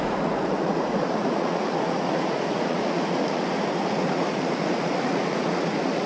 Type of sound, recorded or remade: remade